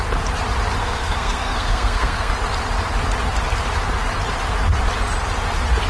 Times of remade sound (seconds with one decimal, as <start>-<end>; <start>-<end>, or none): 0.8-2.3